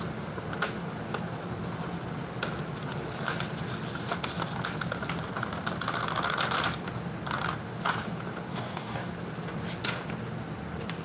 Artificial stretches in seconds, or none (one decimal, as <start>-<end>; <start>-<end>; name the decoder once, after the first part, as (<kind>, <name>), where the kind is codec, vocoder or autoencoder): 8.5-9.1 (codec, DAC)